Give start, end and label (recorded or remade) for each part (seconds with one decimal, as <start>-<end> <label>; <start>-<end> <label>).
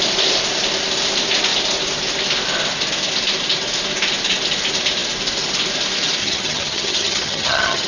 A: 0.0-6.2 recorded; 6.2-7.9 remade